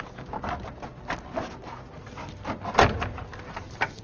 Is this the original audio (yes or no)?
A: yes